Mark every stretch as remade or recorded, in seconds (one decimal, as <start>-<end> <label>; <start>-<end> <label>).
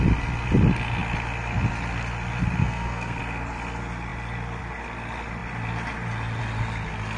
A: 0.0-2.6 recorded; 2.6-3.2 remade; 3.2-7.2 recorded